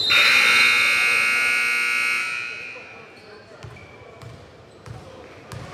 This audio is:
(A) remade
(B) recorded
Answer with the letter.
B